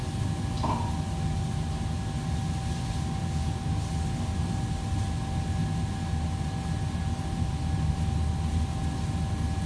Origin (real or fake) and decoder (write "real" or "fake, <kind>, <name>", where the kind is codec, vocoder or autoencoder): real